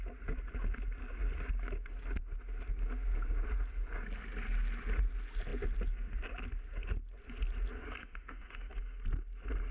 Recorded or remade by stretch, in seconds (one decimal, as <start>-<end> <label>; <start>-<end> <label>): 0.0-8.0 recorded; 8.0-8.7 remade; 8.7-9.7 recorded

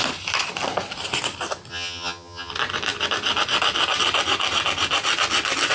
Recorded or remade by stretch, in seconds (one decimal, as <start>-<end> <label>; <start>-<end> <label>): 0.0-1.7 recorded; 1.7-2.5 remade; 2.5-5.7 recorded

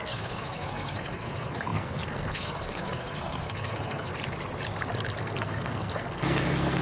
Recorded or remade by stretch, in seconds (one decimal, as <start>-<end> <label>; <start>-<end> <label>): 0.0-4.1 remade; 4.1-5.2 recorded; 5.2-6.8 remade

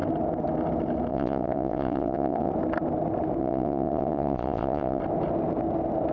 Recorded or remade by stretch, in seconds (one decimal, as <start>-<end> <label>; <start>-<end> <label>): 0.0-1.1 recorded; 1.1-2.5 remade; 2.5-3.4 recorded; 3.4-5.0 remade; 5.0-6.1 recorded

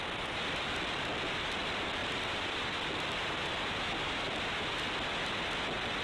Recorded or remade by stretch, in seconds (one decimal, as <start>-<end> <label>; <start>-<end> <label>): 0.0-2.0 recorded; 2.0-2.9 remade; 2.9-6.0 recorded

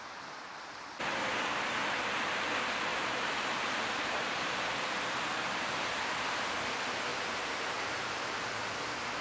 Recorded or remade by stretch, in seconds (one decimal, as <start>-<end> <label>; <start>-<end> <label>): 0.0-2.9 recorded; 2.9-4.6 remade; 4.6-7.1 recorded; 7.1-8.5 remade; 8.5-9.2 recorded